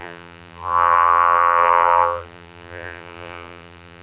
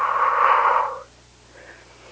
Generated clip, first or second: first